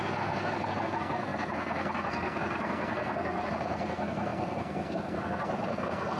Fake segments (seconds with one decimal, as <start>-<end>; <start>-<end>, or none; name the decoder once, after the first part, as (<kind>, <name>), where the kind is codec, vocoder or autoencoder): 0.0-6.2 (codec, SNAC)